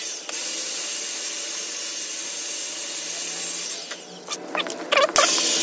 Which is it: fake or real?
real